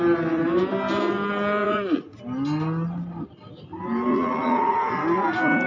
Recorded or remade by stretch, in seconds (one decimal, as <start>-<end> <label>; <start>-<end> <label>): 0.0-1.6 recorded; 1.6-2.2 remade; 2.2-4.1 recorded; 4.1-4.9 remade; 4.9-5.7 recorded